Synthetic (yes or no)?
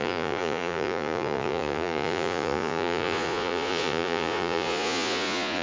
yes